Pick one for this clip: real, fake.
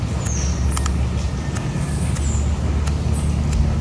real